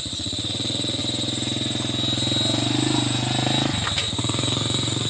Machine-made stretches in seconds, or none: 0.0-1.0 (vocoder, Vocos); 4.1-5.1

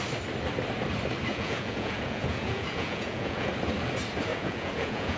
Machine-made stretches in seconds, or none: 1.3-3.5 (vocoder, Vocos); 4.3-5.2

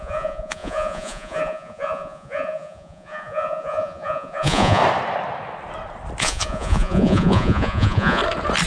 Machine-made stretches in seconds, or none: 0.0-4.8 (vocoder, Vocos); 6.2-8.2

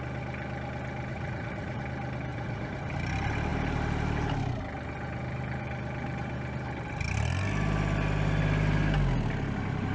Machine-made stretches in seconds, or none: 1.1-1.8 (vocoder, Vocos); 2.3-2.8